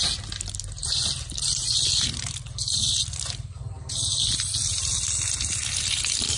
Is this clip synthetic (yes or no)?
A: no